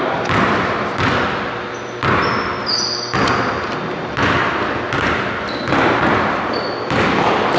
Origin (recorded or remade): recorded